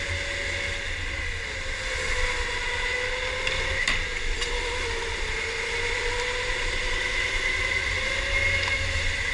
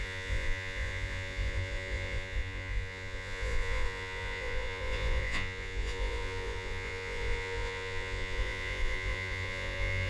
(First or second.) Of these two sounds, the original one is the first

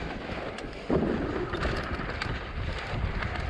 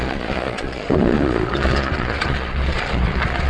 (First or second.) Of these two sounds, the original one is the first